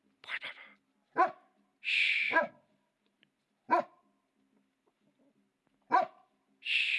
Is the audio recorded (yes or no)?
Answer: yes